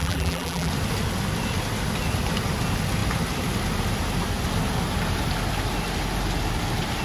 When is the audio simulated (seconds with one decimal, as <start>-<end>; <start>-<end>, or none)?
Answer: 0.0-0.7